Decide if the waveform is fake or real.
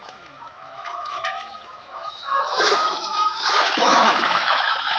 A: fake